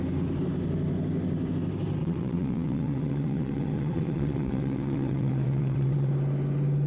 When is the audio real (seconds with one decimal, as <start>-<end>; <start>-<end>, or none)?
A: 0.0-2.0; 6.1-6.9